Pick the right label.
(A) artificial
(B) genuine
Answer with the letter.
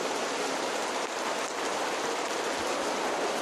B